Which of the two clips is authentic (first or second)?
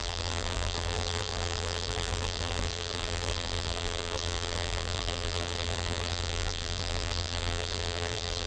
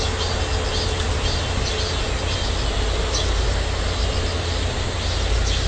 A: second